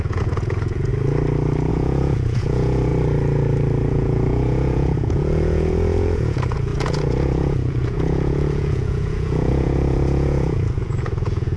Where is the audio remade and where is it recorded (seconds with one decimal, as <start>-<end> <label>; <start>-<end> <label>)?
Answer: 0.0-0.9 remade; 0.9-1.7 recorded; 1.7-2.9 remade; 2.9-3.9 recorded; 3.9-11.6 remade